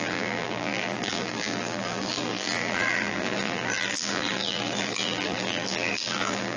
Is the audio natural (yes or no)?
no